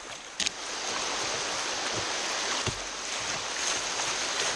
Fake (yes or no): no